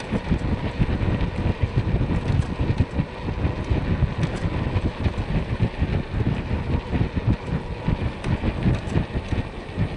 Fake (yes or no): no